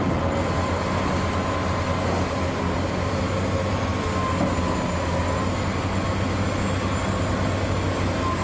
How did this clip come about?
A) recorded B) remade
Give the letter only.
A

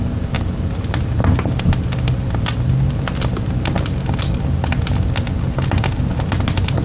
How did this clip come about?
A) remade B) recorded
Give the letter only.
B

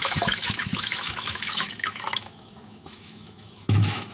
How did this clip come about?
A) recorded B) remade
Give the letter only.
B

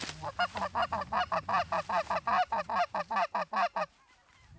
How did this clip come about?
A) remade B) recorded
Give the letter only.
B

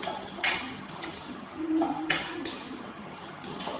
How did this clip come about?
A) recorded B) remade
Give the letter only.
B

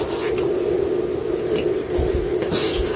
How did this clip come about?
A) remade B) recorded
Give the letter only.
B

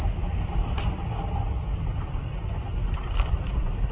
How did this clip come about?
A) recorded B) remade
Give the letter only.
A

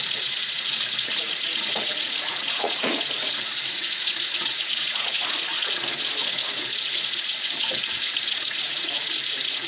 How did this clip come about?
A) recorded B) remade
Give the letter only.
B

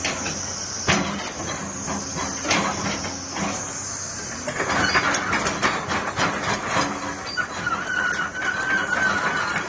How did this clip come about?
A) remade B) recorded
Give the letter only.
B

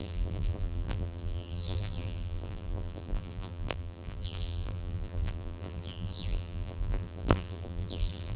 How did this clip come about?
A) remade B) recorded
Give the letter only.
A